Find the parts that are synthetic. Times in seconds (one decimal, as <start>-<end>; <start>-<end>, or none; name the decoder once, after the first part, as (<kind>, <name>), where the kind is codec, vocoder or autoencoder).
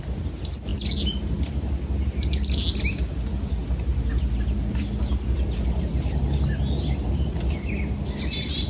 none